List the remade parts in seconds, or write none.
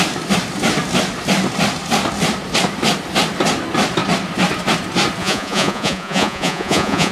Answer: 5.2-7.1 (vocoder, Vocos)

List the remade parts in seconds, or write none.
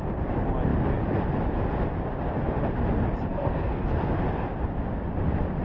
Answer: 3.3-3.9 (codec, SNAC)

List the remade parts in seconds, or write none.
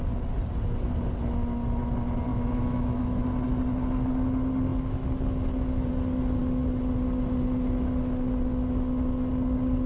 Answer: 2.3-3.2 (autoencoder, DAC-VAE)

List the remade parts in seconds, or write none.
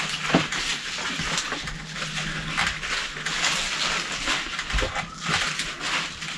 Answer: none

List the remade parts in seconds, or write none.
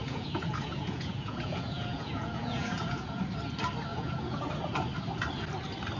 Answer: 0.0-3.2 (vocoder, Vocos); 3.9-4.5